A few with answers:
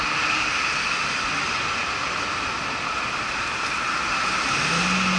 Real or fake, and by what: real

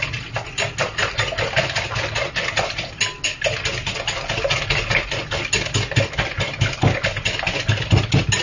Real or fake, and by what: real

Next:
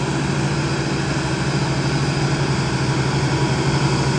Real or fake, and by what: real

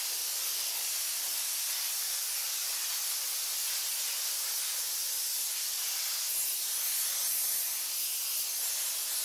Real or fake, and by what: real